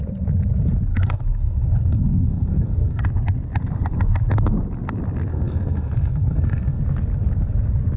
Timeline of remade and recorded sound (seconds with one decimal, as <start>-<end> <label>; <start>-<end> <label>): 0.0-0.9 recorded; 0.9-3.0 remade; 3.0-5.3 recorded; 5.3-6.8 remade; 6.8-8.0 recorded

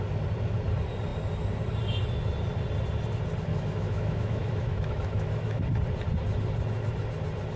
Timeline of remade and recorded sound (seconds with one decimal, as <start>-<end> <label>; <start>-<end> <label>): 0.0-3.5 recorded; 3.5-5.6 remade; 5.6-7.6 recorded

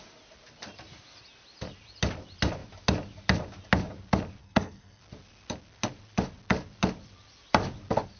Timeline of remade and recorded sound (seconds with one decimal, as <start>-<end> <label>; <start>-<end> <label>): 0.0-4.4 recorded; 4.4-5.0 remade; 5.0-8.2 recorded

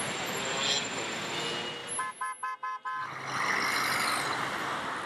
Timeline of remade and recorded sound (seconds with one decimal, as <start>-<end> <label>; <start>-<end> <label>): 0.0-5.1 recorded

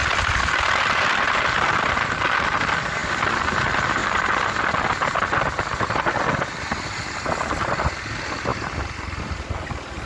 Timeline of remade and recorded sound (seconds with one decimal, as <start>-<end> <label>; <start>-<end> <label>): 0.0-10.1 recorded

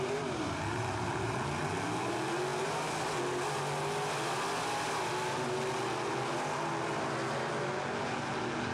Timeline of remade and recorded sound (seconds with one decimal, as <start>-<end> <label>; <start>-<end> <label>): 0.0-8.7 recorded